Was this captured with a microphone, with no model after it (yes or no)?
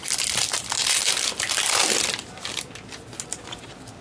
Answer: yes